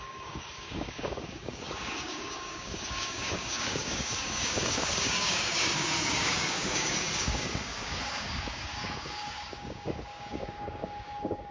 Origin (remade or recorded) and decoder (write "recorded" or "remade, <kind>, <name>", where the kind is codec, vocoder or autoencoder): remade, codec, DAC